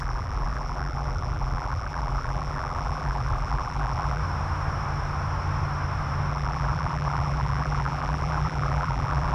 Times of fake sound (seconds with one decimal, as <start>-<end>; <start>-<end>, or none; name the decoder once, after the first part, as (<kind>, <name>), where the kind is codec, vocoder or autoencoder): 0.0-4.2 (vocoder, BigVGAN v2); 6.3-9.3